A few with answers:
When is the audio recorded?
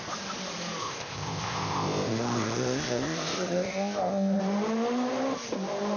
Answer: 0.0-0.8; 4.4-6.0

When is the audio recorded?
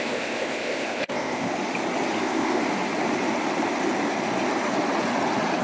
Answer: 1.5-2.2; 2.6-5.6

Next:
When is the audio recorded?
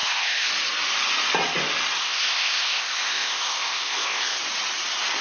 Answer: 0.5-2.0; 4.4-5.2